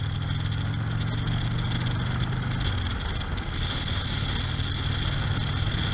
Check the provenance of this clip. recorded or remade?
recorded